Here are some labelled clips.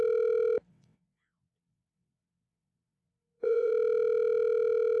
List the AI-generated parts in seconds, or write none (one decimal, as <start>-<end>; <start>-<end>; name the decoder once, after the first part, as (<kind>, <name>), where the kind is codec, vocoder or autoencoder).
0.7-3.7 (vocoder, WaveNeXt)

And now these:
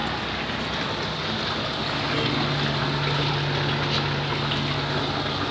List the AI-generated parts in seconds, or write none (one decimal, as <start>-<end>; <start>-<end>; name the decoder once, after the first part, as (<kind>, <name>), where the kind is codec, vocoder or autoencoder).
none

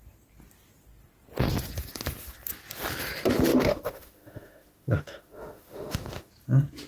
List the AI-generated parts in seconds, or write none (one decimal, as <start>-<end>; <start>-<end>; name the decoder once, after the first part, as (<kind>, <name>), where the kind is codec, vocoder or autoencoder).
3.5-6.3 (autoencoder, DAC-VAE)

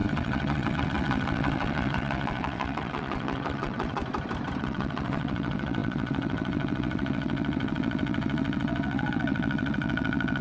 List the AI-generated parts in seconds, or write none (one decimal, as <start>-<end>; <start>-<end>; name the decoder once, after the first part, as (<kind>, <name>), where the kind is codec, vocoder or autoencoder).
0.0-4.0 (vocoder, WaveNeXt); 4.6-10.4